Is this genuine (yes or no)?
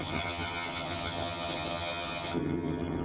no